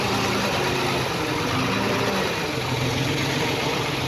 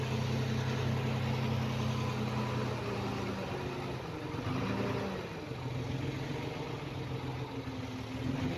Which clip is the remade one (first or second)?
first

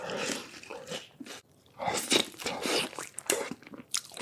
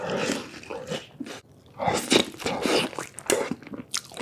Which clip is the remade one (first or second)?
first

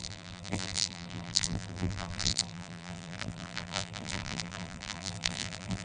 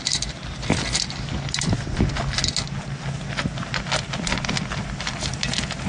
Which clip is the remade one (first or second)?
first